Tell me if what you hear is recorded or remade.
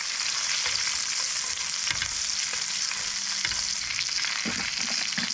recorded